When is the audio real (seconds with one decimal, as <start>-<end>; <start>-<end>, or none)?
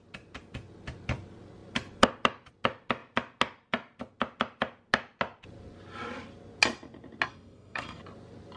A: 0.0-7.3; 8.0-8.6